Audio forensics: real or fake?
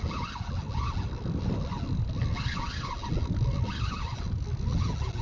real